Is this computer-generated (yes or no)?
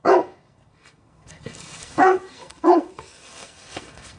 yes